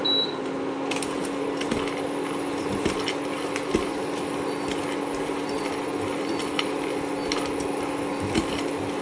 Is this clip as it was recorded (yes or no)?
yes